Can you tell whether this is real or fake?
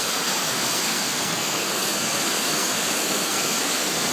fake